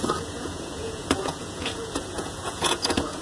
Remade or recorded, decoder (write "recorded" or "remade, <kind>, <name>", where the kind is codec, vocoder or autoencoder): remade, vocoder, Vocos